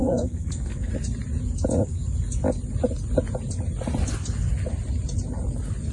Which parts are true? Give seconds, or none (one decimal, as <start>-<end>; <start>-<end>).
0.9-5.9